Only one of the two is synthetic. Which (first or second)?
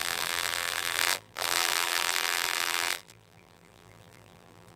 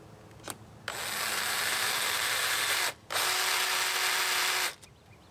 first